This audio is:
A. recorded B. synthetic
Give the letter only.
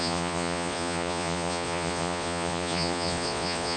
B